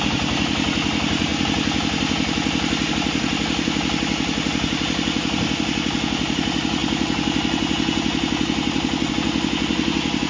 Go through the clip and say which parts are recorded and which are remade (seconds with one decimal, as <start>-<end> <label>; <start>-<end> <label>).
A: 0.0-10.3 recorded